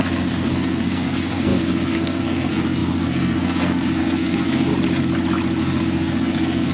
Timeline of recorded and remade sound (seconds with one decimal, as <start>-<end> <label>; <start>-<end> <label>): 0.0-4.7 remade; 4.7-5.6 recorded; 5.6-6.7 remade